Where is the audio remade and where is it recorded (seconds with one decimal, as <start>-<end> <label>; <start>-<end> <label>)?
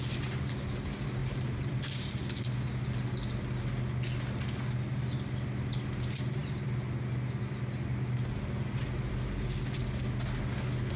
0.0-1.2 recorded; 1.2-2.1 remade; 2.1-11.0 recorded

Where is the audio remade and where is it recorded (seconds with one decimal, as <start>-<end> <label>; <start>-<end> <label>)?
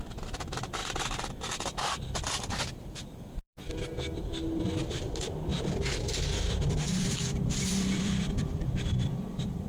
0.0-0.8 remade; 0.8-1.5 recorded; 1.5-9.7 remade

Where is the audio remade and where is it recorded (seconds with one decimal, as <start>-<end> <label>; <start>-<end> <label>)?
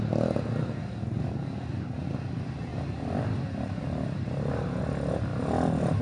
0.0-2.7 recorded; 2.7-4.5 remade; 4.5-5.3 recorded; 5.3-6.0 remade